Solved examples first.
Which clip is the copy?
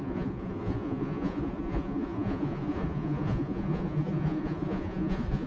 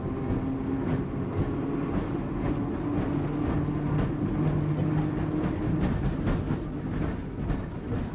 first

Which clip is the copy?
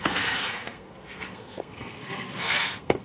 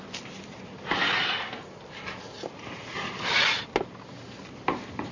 first